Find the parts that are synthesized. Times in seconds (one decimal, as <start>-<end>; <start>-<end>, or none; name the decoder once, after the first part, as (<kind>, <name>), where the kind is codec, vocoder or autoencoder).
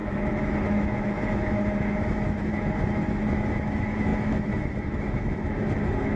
0.0-6.2 (autoencoder, DAC-VAE)